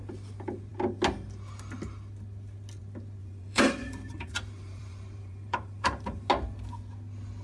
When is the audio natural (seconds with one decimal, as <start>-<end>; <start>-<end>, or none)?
0.0-3.2; 6.3-7.4